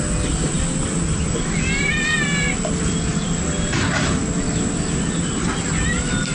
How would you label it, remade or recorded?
recorded